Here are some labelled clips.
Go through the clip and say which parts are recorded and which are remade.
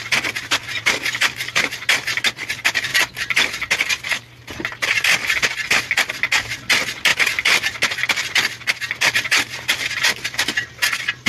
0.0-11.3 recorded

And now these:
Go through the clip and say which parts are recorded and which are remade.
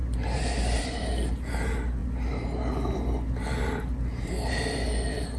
0.0-5.4 recorded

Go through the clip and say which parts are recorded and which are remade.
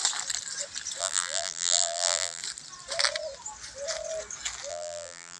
0.0-1.0 recorded; 1.0-2.4 remade; 2.4-4.7 recorded; 4.7-5.4 remade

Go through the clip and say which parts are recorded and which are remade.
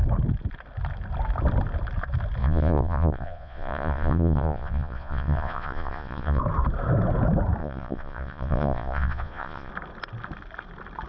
0.0-2.4 recorded; 2.4-6.4 remade; 6.4-7.6 recorded; 7.6-9.7 remade; 9.7-11.1 recorded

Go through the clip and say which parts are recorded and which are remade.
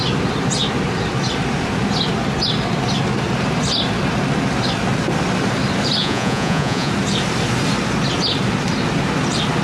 0.0-6.0 recorded; 6.0-6.9 remade; 6.9-9.6 recorded